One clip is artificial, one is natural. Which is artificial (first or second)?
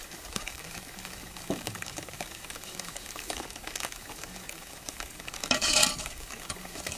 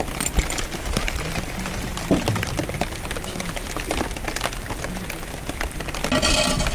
first